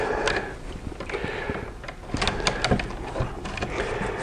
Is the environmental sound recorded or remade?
recorded